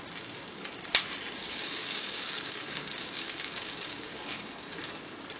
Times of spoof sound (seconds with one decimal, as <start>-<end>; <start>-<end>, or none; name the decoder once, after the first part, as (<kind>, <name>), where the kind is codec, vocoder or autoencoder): 1.4-4.6 (codec, DAC)